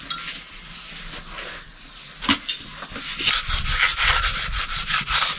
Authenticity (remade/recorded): recorded